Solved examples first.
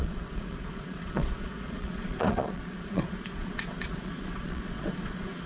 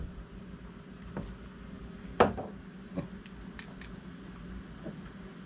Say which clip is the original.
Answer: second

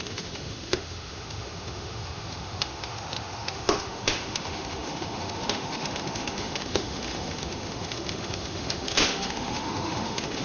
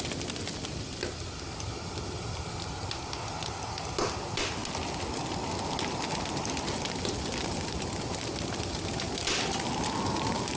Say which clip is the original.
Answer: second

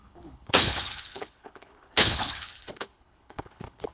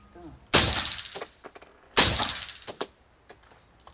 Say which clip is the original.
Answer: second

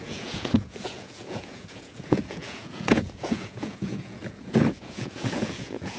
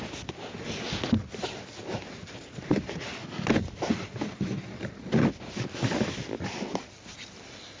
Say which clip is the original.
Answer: second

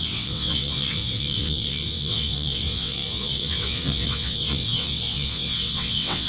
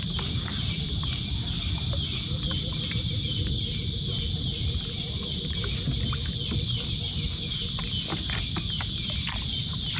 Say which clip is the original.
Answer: second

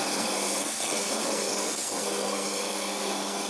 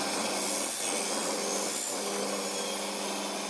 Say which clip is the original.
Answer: second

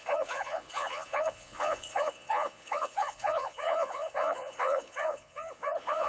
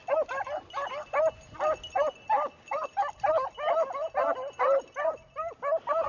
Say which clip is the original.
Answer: second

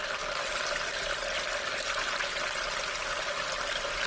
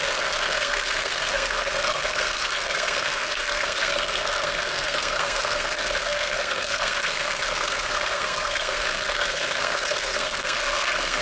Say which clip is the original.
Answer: first